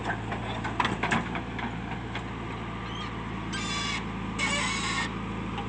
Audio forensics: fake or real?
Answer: real